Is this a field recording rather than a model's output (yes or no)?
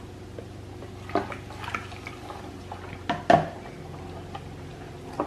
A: yes